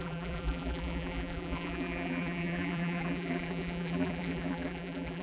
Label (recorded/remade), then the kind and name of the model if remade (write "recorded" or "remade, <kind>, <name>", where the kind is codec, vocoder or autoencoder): remade, vocoder, BigVGAN v2